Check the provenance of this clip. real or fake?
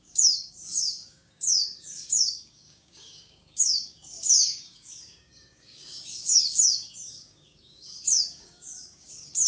fake